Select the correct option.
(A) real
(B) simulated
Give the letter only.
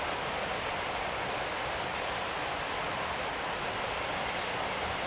A